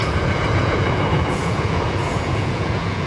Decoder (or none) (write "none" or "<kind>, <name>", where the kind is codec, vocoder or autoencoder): vocoder, Vocos